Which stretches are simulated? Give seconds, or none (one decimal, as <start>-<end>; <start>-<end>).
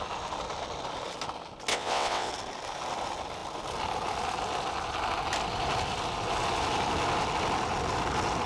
1.7-2.3